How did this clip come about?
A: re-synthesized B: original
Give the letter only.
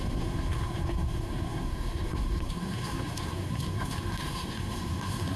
A